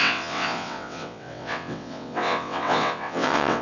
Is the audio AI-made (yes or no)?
yes